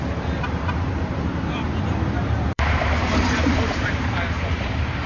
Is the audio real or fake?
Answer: fake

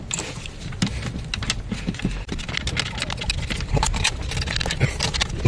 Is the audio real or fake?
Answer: real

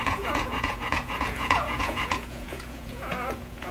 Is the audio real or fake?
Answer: fake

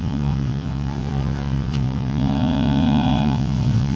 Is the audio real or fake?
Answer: fake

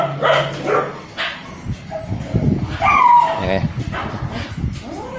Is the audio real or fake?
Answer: real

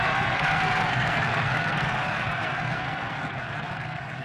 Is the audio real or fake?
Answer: fake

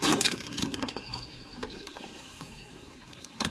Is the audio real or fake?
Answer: fake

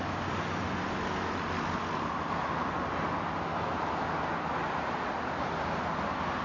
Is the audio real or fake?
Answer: real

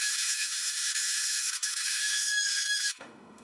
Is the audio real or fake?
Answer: fake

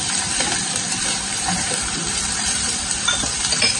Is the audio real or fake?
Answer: fake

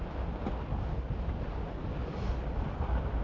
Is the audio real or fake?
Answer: real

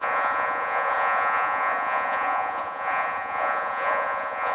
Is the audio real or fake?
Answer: fake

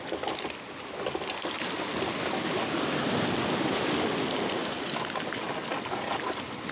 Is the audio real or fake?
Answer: real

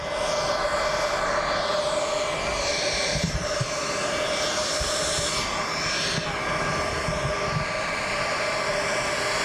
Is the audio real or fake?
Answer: real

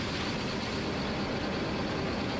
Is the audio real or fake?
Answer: real